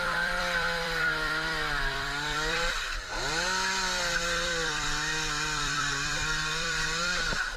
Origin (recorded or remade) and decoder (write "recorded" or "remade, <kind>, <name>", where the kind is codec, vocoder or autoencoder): remade, vocoder, BigVGAN v2